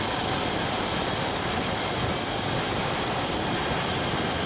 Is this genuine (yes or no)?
yes